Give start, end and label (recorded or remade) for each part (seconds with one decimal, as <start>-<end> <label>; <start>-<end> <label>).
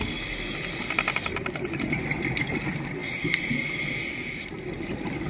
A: 0.0-5.3 recorded